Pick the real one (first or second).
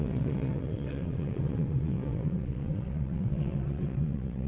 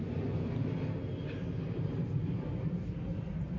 second